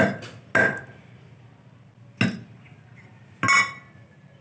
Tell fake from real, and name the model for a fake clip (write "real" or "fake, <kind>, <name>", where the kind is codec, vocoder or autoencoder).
real